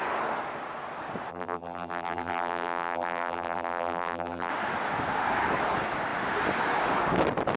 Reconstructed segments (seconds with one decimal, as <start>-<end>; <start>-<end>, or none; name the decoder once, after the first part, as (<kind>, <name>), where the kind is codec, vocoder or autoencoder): 1.3-4.5 (vocoder, BigVGAN v2)